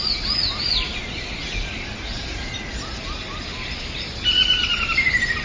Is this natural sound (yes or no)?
yes